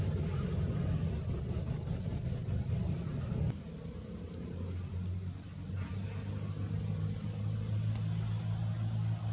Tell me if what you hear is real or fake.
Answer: real